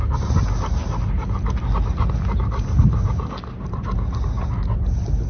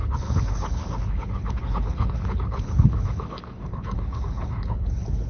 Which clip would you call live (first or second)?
first